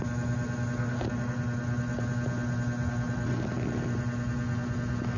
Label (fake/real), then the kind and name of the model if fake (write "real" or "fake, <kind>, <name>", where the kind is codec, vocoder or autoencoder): real